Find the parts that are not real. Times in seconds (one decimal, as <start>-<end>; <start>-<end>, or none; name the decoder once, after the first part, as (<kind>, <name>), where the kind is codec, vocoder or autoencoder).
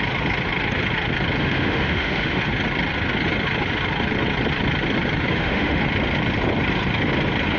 1.4-2.4 (autoencoder, DAC-VAE); 5.3-5.8